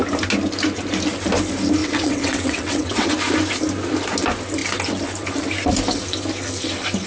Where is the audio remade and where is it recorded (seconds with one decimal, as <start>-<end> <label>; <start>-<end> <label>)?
0.0-1.8 recorded; 1.8-3.1 remade; 3.1-7.1 recorded